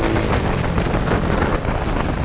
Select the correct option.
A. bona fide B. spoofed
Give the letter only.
A